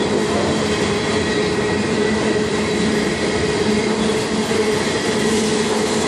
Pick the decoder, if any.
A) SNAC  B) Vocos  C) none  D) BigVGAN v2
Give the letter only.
C